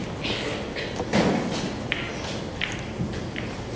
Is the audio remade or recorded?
recorded